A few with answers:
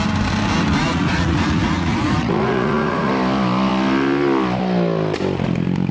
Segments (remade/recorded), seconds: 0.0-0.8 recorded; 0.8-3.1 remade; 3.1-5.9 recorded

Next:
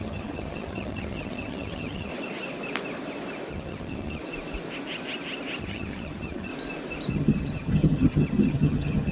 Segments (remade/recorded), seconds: 0.0-2.1 remade; 2.1-3.5 recorded; 3.5-4.2 remade; 4.2-5.6 recorded; 5.6-6.5 remade; 6.5-7.1 recorded; 7.1-9.1 remade

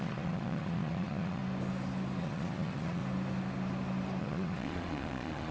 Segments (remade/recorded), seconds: 0.0-1.4 remade; 1.4-2.2 recorded; 2.2-3.0 remade; 3.0-4.2 recorded; 4.2-5.5 remade

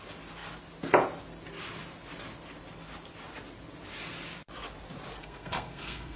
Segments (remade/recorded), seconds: 0.0-5.2 recorded; 5.2-6.2 remade

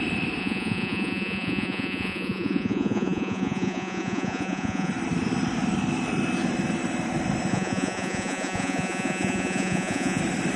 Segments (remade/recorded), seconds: 0.0-0.4 recorded; 0.4-4.9 remade; 4.9-7.5 recorded; 7.5-10.2 remade; 10.2-10.6 recorded